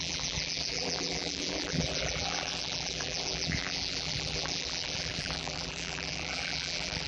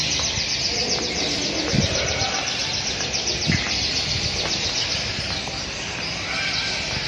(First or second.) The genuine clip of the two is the second